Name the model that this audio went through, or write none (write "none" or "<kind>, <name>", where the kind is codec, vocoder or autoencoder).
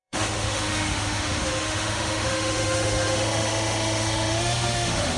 autoencoder, DAC-VAE